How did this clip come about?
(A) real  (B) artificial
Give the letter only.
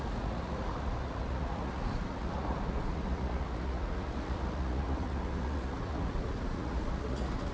B